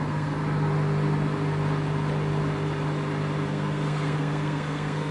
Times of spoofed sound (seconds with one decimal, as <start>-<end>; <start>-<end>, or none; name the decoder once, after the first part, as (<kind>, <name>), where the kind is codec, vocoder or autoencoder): 0.0-0.4 (codec, SNAC); 3.5-5.1